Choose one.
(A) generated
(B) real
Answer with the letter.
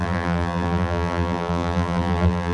A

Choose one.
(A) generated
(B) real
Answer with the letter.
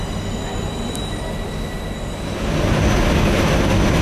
B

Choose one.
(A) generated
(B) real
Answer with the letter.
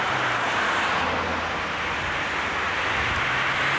B